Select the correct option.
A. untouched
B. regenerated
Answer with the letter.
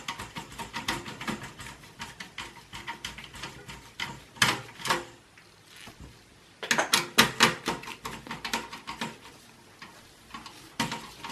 A